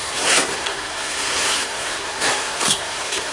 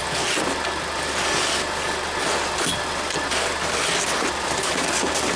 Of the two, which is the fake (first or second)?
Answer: first